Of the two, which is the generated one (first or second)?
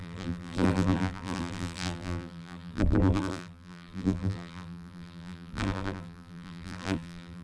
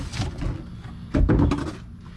first